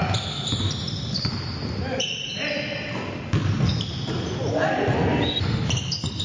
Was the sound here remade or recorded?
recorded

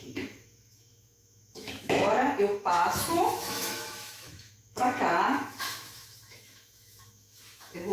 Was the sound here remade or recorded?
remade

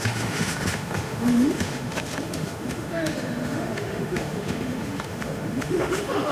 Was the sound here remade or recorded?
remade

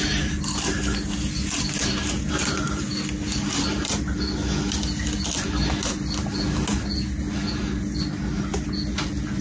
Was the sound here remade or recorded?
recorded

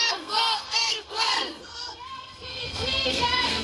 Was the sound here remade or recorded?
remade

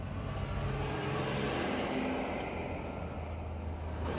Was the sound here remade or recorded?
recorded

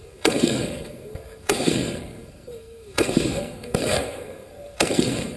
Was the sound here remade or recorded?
remade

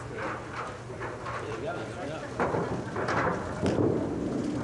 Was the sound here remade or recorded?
recorded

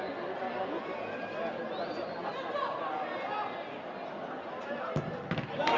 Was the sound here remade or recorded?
recorded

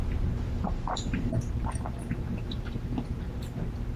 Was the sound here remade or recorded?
remade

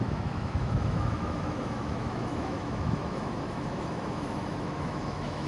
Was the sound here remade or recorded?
remade